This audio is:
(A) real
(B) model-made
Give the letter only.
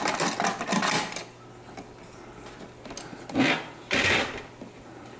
A